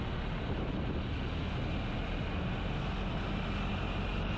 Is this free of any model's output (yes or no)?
yes